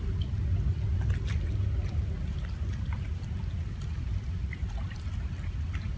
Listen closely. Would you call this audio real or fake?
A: real